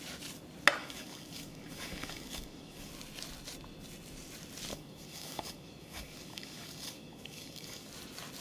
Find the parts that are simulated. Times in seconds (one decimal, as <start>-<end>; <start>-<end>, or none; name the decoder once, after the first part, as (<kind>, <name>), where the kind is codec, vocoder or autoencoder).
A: 0.8-2.9 (codec, DAC); 4.7-7.9

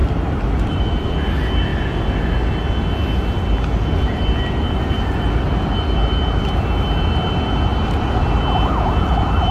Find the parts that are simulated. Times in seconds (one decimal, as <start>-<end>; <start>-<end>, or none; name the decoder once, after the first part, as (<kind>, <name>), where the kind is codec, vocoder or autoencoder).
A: 0.0-0.8 (vocoder, BigVGAN v2); 7.7-8.4